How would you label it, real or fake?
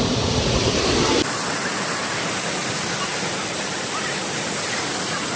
real